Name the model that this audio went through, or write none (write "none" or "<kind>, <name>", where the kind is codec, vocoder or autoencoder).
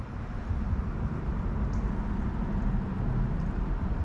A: none